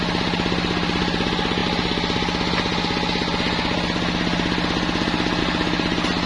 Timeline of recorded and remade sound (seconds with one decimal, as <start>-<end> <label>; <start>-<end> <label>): 0.0-6.3 recorded